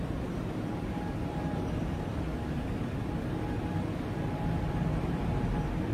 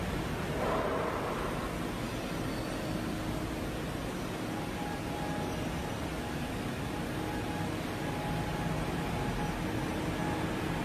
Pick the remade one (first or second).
first